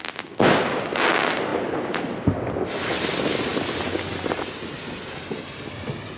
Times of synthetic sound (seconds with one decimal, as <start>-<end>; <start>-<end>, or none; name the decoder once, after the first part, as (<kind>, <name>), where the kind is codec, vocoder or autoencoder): none